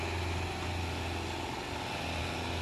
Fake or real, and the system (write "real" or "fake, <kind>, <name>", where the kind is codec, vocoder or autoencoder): real